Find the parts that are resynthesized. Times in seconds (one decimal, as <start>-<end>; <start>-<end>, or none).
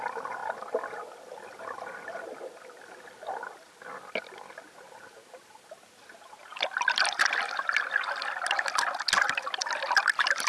none